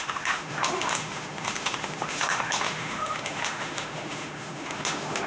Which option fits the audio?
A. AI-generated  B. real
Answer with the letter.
A